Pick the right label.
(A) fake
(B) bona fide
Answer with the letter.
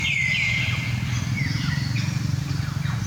B